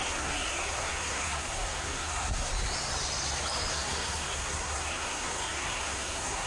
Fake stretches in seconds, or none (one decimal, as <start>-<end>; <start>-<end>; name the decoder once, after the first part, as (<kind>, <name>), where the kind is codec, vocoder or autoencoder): 0.0-2.5 (codec, SNAC); 3.7-6.5